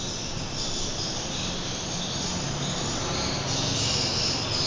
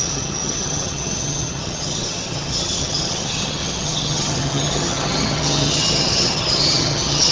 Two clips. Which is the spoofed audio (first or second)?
second